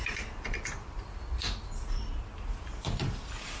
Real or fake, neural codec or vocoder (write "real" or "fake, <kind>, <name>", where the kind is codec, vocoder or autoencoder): real